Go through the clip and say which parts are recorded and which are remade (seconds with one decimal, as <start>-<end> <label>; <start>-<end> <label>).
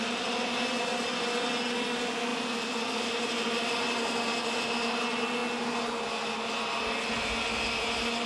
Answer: 0.0-8.3 recorded